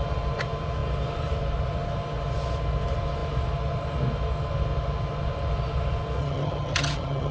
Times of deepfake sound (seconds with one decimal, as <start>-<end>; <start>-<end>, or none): 6.2-7.3